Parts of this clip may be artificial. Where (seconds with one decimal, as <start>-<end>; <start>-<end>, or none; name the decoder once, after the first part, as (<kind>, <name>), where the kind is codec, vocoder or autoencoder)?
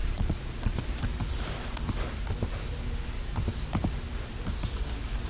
0.0-0.8 (vocoder, Vocos)